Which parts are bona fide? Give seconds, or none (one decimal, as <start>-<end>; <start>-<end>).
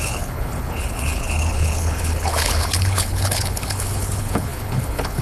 none